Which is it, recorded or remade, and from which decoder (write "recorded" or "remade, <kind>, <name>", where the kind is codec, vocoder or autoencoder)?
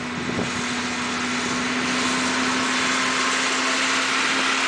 recorded